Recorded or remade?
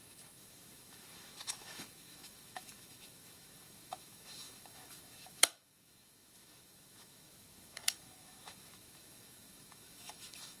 remade